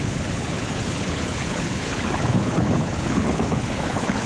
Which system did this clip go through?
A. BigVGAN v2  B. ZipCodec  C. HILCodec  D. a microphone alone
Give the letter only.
C